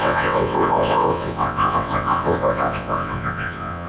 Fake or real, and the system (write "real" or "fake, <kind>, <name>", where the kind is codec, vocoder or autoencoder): fake, vocoder, WaveNeXt